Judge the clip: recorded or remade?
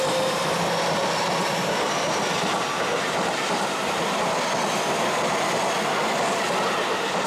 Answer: recorded